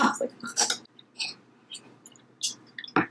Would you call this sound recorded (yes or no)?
yes